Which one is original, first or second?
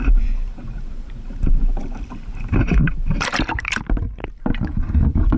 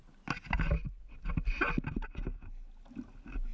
second